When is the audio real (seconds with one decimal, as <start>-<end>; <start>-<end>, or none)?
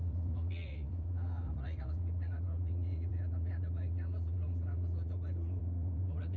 none